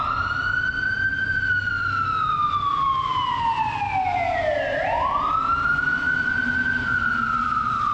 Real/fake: real